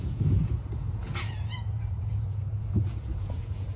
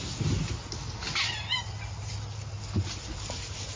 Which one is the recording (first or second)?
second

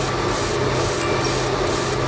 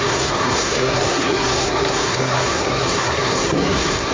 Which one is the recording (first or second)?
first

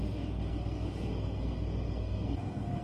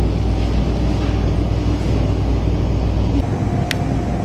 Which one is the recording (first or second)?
second